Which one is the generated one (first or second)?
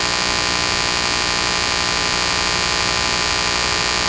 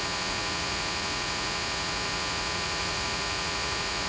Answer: second